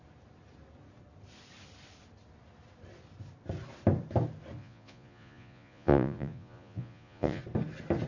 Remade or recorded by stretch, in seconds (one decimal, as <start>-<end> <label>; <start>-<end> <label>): 0.0-4.6 recorded; 4.6-7.4 remade; 7.4-8.1 recorded